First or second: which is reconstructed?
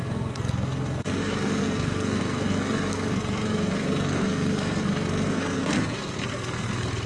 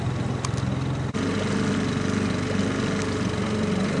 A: first